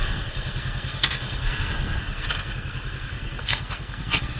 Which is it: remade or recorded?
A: remade